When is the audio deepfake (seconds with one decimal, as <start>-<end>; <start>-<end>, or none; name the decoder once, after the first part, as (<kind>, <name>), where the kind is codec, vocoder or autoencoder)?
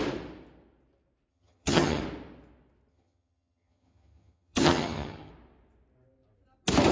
1.3-2.0 (vocoder, HiFi-GAN); 2.9-5.3